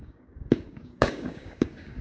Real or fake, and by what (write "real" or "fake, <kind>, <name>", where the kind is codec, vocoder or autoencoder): fake, codec, DAC